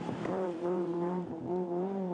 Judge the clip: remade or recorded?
remade